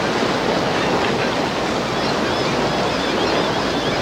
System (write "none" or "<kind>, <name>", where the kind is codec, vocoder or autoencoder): none